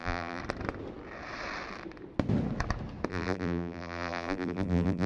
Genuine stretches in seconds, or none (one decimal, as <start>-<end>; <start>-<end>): 0.4-3.1